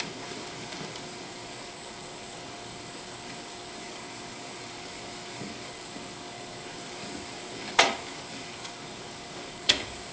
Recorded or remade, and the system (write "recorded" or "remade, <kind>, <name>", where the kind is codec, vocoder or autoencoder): remade, codec, DAC